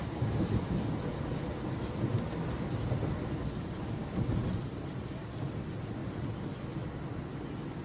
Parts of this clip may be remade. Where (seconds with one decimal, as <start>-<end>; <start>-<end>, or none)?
4.4-5.0; 6.0-7.2

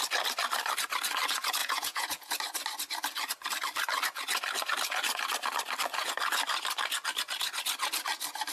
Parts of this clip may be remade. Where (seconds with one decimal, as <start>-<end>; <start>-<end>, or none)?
1.6-2.3

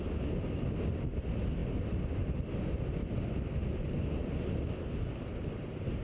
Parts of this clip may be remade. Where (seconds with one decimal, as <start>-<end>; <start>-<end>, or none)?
none